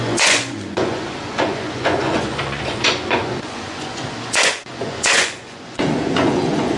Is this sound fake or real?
fake